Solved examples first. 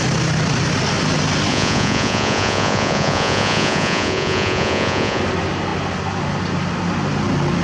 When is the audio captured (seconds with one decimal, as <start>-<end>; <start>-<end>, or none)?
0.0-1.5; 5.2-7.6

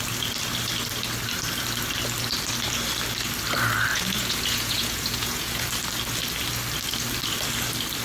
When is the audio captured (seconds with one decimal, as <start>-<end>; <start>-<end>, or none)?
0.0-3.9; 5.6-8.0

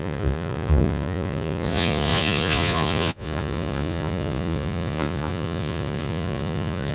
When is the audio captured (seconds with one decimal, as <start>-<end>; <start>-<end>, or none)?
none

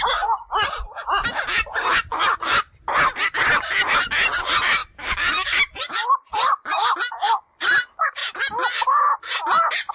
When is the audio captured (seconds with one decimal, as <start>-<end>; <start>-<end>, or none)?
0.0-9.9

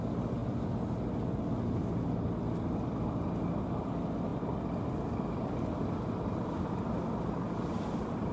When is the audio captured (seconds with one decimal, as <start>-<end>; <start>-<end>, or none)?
0.0-8.3

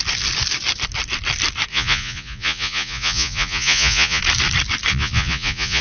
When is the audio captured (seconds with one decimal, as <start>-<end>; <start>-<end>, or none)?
0.0-1.7; 4.2-4.9